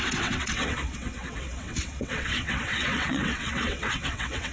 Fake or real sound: fake